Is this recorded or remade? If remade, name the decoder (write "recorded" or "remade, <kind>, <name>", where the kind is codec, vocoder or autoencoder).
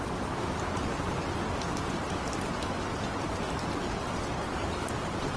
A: recorded